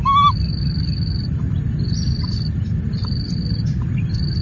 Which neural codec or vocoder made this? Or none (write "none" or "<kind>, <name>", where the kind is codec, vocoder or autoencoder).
none